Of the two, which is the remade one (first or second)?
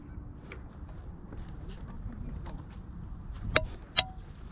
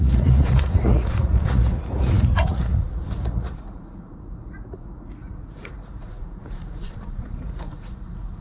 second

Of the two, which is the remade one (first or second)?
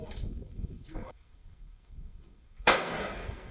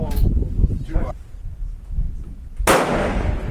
first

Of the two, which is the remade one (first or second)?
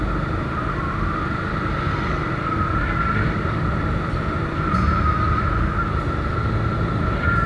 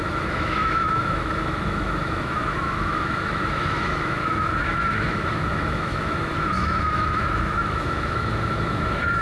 second